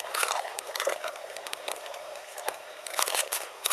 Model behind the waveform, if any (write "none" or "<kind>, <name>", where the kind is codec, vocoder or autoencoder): codec, SNAC